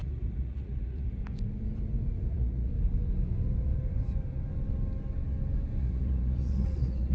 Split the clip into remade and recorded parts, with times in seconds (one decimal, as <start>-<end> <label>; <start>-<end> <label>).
0.0-1.2 remade; 1.2-2.3 recorded; 2.3-2.7 remade; 2.7-5.8 recorded; 5.8-7.1 remade